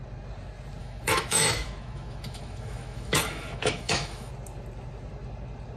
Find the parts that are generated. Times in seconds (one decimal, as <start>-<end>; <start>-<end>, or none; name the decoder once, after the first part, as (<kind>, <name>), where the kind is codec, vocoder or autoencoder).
0.8-4.3 (autoencoder, DAC-VAE)